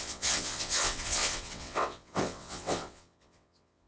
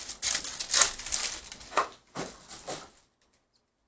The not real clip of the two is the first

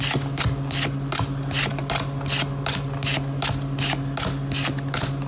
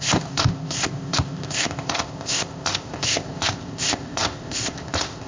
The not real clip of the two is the second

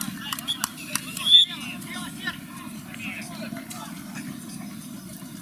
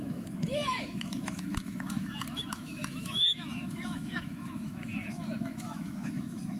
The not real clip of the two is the second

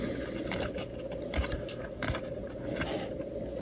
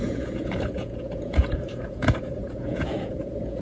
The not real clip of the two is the second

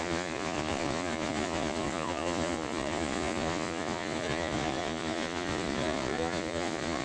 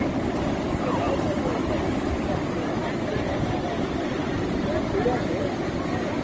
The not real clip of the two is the first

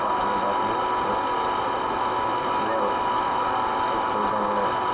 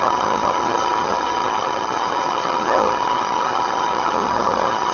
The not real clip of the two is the second